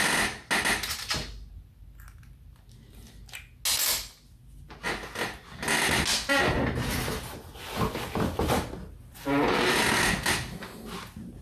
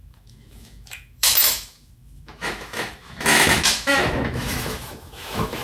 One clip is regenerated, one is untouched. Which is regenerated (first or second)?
second